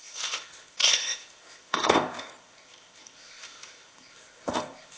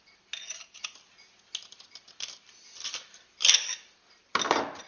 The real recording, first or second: second